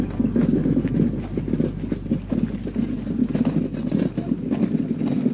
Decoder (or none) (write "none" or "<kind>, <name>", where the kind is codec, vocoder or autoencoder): none